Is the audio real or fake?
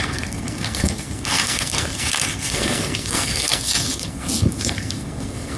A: fake